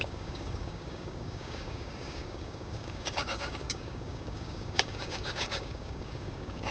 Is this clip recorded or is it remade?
remade